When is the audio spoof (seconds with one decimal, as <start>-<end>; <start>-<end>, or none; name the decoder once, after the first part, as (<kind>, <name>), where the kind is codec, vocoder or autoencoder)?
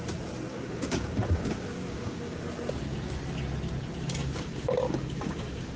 0.5-2.4 (codec, DAC); 4.2-5.8